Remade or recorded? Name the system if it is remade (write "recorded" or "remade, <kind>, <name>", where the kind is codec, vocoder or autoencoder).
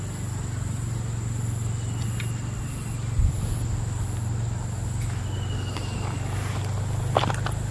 recorded